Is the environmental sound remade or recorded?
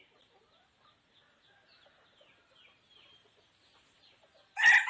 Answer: recorded